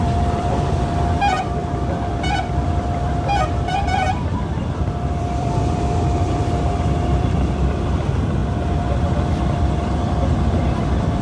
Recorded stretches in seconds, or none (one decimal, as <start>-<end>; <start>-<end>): 8.4-9.0